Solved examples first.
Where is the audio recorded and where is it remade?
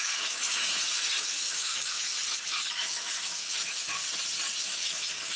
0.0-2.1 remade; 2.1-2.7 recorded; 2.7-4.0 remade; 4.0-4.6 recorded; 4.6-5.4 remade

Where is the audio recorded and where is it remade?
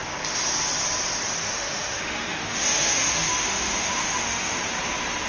0.0-1.4 recorded; 1.4-4.6 remade; 4.6-5.3 recorded